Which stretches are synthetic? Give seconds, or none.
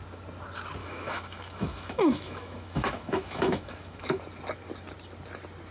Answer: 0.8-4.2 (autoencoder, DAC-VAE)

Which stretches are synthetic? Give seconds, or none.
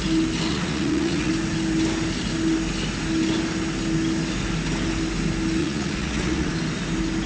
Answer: 0.5-1.3 (vocoder, Vocos); 5.6-6.5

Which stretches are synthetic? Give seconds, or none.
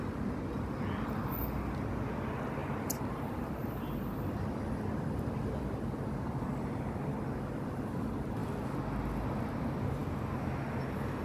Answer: none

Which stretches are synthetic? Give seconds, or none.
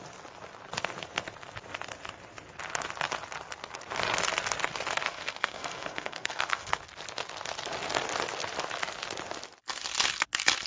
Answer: 5.1-6.8 (codec, SNAC)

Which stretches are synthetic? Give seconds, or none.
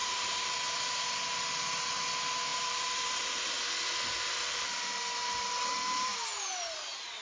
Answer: 0.0-0.5 (vocoder, BigVGAN v2); 2.5-3.2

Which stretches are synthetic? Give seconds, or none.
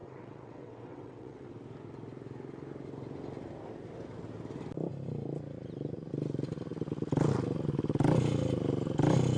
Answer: 0.0-1.5 (vocoder, WaveNeXt)